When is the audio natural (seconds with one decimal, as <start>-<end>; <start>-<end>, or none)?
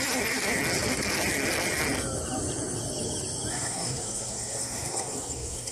0.0-3.5